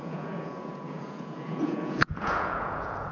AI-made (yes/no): yes